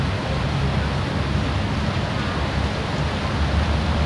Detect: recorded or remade recorded